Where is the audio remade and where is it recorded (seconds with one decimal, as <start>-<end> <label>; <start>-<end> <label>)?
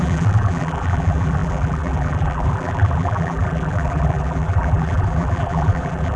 0.0-6.2 remade